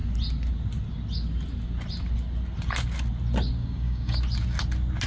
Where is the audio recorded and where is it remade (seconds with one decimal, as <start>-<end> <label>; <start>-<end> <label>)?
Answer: 0.0-3.6 recorded; 3.6-4.2 remade; 4.2-5.1 recorded